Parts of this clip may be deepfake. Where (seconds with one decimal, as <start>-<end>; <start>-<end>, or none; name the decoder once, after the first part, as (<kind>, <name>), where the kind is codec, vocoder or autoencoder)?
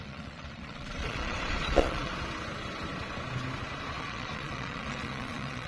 0.0-2.1 (vocoder, Vocos); 4.0-5.7